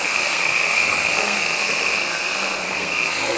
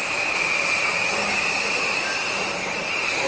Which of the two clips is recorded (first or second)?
second